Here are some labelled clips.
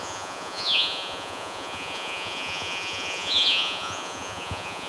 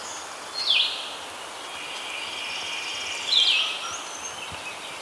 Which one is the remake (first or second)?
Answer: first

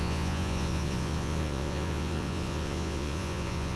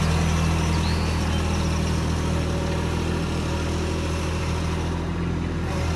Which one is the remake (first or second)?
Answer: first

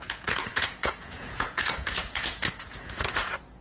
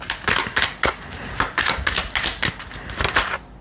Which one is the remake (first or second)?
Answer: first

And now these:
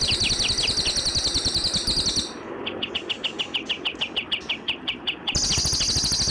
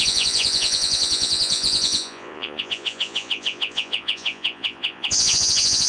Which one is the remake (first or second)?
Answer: second